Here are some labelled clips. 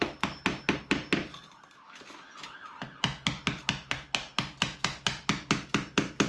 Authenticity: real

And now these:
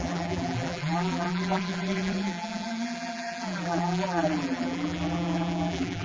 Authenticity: fake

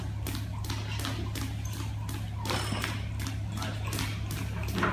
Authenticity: real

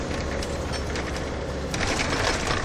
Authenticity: real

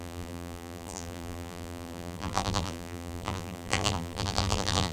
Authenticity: fake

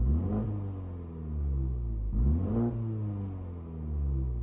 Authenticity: real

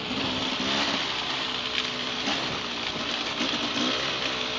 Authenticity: real